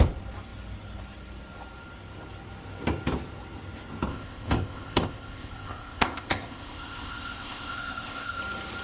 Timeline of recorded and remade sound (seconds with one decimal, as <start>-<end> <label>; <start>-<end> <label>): 0.0-4.1 recorded; 4.1-8.4 remade; 8.4-8.8 recorded